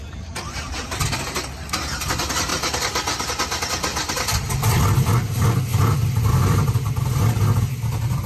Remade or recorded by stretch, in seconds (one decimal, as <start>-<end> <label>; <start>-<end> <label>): 0.0-2.5 recorded; 2.5-3.3 remade; 3.3-3.9 recorded; 3.9-4.8 remade; 4.8-5.7 recorded; 5.7-6.9 remade; 6.9-8.3 recorded